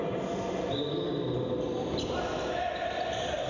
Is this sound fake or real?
real